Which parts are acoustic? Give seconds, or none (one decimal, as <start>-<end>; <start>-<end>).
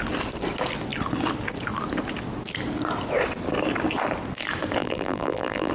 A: 0.0-4.8